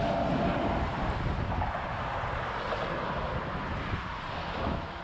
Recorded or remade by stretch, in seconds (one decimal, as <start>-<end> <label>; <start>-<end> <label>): 0.0-4.4 recorded; 4.4-5.0 remade